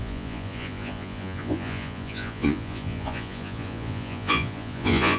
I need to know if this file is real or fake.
fake